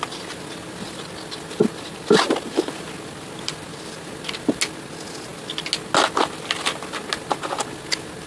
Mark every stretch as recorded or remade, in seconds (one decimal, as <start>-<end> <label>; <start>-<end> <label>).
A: 0.0-8.3 recorded

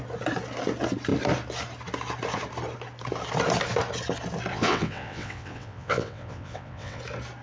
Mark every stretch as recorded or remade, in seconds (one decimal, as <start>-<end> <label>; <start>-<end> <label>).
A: 0.0-4.5 recorded; 4.5-7.0 remade; 7.0-7.4 recorded

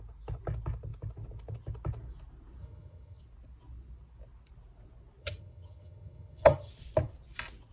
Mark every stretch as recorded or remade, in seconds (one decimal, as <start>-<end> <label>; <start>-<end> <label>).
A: 0.0-2.6 recorded; 2.6-3.2 remade; 3.2-5.2 recorded; 5.2-6.7 remade; 6.7-7.7 recorded

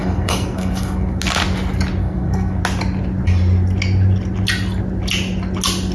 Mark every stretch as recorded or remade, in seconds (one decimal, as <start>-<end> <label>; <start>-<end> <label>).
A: 0.0-1.2 remade; 1.2-2.0 recorded; 2.0-2.6 remade; 2.6-5.9 recorded

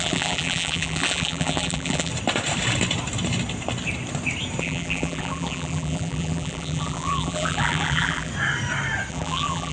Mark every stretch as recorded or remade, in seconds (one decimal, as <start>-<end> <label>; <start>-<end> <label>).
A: 0.0-2.1 remade; 2.1-4.6 recorded; 4.6-8.3 remade; 8.3-9.1 recorded; 9.1-9.7 remade

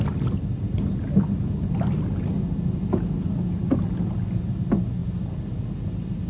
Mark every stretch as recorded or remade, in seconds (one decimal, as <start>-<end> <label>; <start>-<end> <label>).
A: 0.0-6.3 recorded

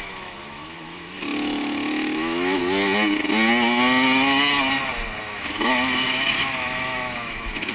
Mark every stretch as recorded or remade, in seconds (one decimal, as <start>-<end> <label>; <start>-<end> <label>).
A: 0.0-2.6 remade; 2.6-5.2 recorded; 5.2-7.7 remade

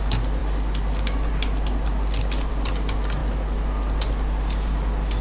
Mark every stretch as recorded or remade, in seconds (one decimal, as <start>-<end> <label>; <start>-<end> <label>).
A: 0.0-5.2 recorded